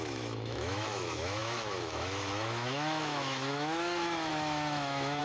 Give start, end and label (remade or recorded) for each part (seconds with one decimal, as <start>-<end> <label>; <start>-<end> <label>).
0.0-5.2 remade